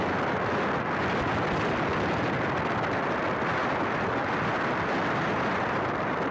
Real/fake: real